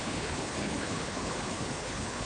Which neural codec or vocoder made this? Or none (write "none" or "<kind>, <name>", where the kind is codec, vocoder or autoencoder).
codec, HILCodec